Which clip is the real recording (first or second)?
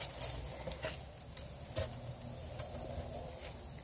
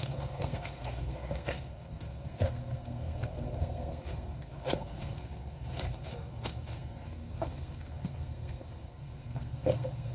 first